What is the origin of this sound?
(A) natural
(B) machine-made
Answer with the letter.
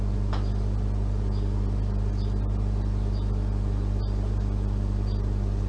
A